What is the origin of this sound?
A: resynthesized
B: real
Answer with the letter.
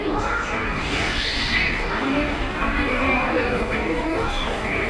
A